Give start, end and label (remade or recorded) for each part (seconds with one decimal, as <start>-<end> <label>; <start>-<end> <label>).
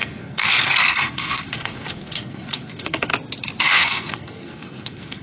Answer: 0.0-3.1 remade; 3.1-3.6 recorded; 3.6-5.2 remade